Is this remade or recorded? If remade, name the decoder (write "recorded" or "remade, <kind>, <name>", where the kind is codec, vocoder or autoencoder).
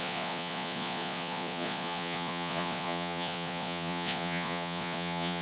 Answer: remade, vocoder, Vocos